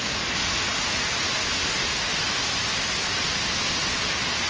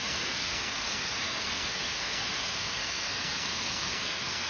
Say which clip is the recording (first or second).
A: first